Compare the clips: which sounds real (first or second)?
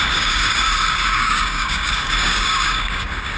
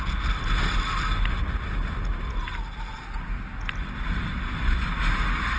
second